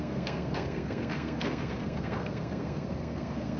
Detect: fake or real fake